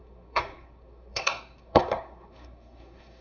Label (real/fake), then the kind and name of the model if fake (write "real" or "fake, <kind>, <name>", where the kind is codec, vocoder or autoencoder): fake, codec, SNAC